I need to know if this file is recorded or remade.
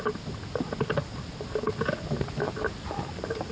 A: recorded